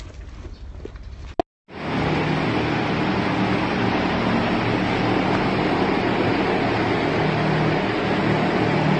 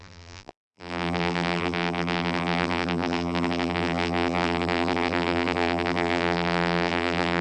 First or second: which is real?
first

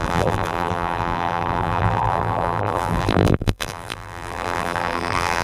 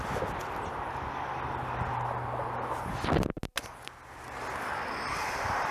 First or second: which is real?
second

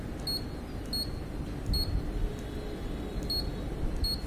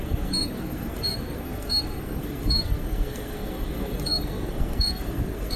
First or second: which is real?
first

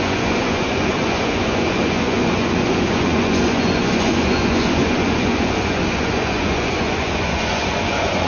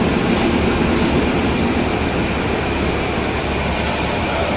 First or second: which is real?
second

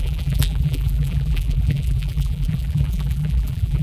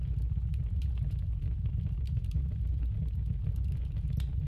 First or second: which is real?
second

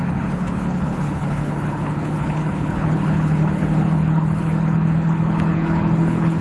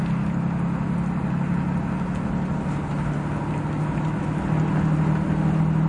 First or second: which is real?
second